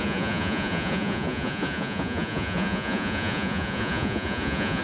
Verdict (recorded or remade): remade